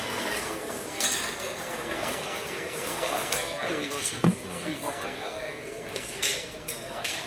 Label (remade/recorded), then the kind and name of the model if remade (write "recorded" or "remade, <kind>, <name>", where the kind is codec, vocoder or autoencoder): remade, codec, SNAC